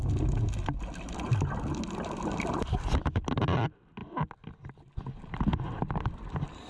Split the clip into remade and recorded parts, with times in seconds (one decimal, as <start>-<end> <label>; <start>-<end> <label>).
0.0-6.7 recorded